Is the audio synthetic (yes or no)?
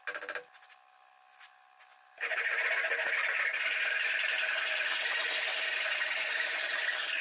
no